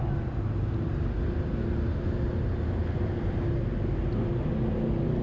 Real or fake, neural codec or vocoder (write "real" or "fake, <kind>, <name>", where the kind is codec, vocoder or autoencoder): real